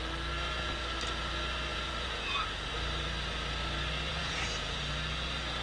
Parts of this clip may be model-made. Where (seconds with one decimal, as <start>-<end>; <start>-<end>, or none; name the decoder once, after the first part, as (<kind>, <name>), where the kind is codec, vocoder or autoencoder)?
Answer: 1.7-2.7 (vocoder, Vocos); 4.1-4.8

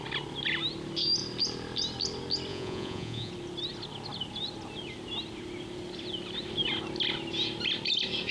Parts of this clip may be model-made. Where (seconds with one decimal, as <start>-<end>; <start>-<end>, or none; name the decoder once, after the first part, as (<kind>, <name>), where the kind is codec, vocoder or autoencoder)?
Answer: 2.5-3.3 (vocoder, Vocos)

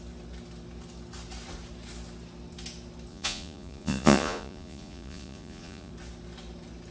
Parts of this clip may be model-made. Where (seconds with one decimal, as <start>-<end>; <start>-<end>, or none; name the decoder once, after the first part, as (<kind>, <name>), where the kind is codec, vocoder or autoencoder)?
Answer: 3.1-5.9 (vocoder, Vocos)

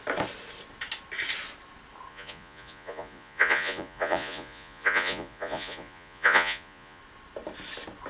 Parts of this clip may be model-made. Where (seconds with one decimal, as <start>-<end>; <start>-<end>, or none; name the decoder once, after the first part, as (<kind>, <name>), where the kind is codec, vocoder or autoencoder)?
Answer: 2.1-7.0 (vocoder, Vocos)

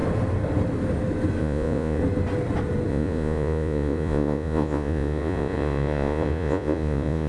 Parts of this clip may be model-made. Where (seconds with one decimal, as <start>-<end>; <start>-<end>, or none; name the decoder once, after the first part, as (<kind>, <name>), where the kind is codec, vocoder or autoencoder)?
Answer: 1.4-2.0 (vocoder, Vocos); 2.9-7.3